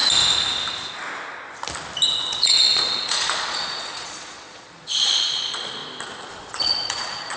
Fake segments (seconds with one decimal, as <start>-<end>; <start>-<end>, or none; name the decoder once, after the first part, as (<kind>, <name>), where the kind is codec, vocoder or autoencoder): 2.1-5.8 (vocoder, Vocos); 6.3-7.4